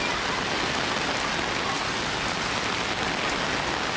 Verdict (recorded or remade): recorded